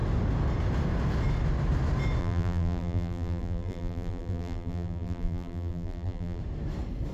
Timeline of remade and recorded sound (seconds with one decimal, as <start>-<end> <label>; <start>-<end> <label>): 0.0-2.2 recorded; 2.2-6.4 remade; 6.4-7.1 recorded